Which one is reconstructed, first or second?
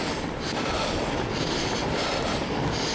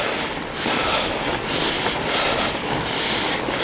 first